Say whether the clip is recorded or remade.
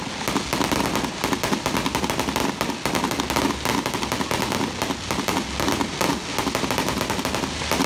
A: recorded